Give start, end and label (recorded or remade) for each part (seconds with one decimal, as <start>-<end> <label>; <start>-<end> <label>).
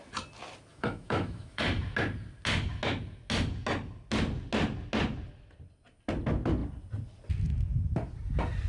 0.0-0.7 recorded; 0.7-1.6 remade; 1.6-8.7 recorded